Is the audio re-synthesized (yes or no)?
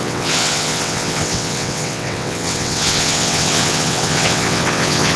yes